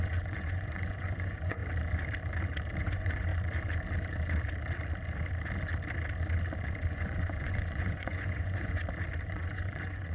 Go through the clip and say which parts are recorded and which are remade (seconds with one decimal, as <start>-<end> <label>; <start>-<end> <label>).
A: 0.0-1.6 remade; 1.6-2.8 recorded; 2.8-3.3 remade; 3.3-6.9 recorded; 6.9-8.8 remade; 8.8-9.3 recorded; 9.3-10.1 remade